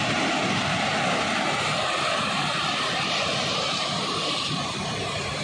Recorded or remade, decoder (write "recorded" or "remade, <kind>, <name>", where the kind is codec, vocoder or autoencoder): remade, vocoder, BigVGAN v2